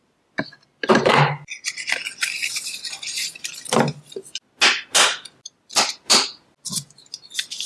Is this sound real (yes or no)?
yes